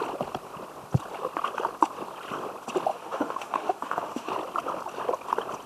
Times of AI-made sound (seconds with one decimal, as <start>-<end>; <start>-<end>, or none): 2.9-4.3